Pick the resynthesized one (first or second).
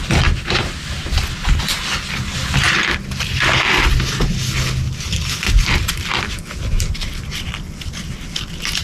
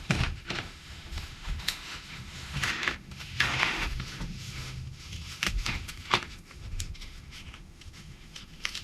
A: second